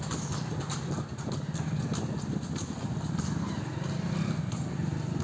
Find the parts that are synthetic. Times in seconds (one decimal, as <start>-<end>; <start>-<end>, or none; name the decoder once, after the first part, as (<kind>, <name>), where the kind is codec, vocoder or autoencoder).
none